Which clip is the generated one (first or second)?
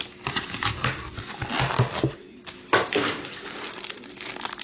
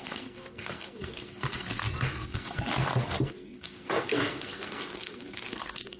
second